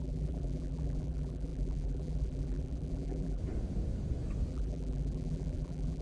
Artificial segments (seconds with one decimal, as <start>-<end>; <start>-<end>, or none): 0.0-3.4; 4.5-6.0